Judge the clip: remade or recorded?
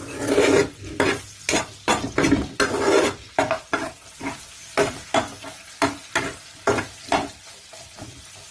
recorded